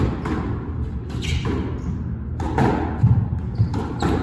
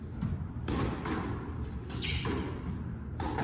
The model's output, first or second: second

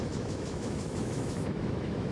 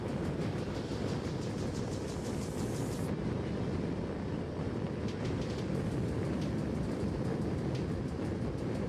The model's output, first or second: first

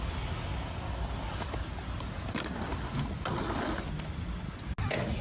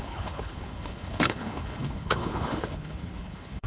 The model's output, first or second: second